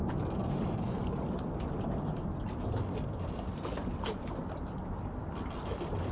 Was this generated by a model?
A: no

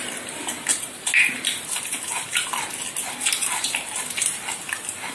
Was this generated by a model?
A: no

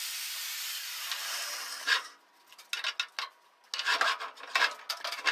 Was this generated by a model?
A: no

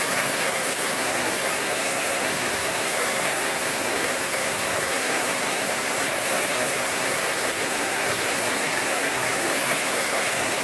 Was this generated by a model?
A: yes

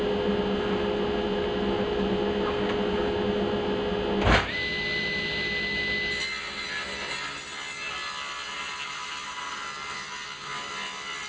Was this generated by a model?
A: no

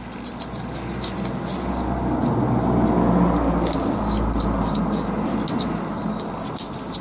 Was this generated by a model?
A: no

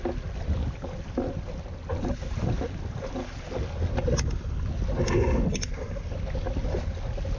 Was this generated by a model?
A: no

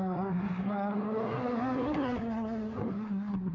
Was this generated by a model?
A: yes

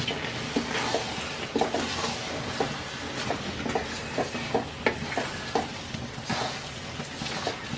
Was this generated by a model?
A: no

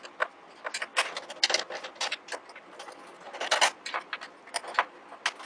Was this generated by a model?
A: no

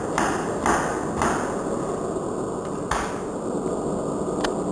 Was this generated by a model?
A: no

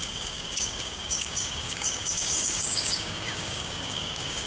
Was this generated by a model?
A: yes